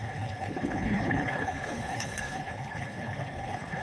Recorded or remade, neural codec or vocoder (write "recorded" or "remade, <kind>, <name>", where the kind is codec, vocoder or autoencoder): remade, codec, HILCodec